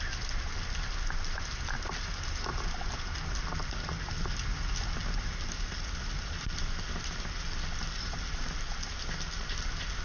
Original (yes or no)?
yes